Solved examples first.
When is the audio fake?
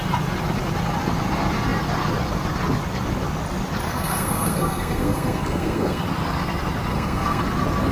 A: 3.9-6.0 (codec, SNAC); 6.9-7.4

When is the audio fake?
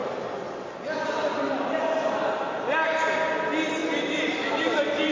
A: 3.8-5.1 (vocoder, BigVGAN v2)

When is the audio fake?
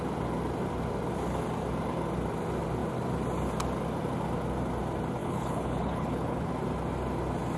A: 5.2-6.5 (codec, HILCodec)